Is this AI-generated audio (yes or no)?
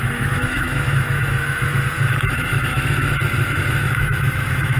yes